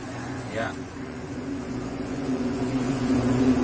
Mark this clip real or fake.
fake